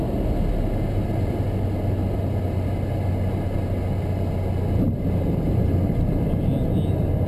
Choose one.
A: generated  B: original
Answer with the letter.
B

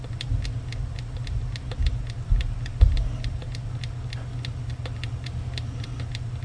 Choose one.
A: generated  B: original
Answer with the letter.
B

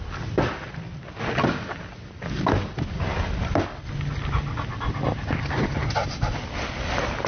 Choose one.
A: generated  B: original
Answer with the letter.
B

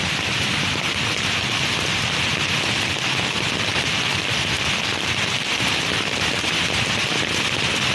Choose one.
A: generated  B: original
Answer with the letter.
B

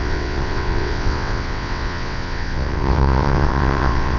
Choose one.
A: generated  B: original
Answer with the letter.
A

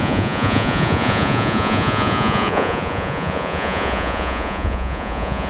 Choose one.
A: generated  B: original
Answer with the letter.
A